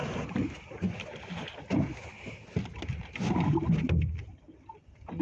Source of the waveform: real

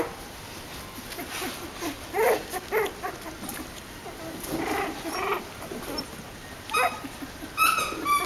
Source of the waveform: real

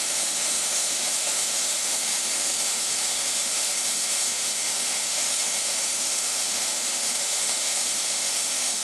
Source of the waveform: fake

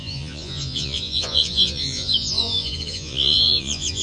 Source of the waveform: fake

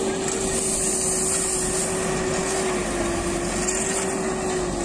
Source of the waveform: real